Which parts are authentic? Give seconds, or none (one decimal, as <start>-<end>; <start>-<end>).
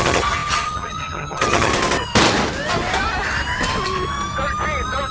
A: 1.7-5.1